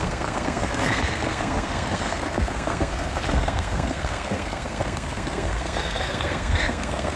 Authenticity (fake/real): fake